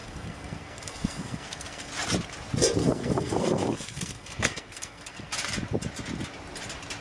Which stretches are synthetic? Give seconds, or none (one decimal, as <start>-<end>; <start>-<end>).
0.0-1.9; 2.8-5.3